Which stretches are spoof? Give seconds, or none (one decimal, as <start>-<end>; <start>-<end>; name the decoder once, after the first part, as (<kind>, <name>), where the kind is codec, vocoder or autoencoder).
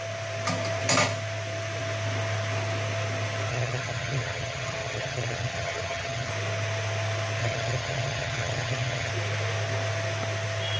3.5-6.3 (vocoder, HiFi-GAN); 7.4-9.1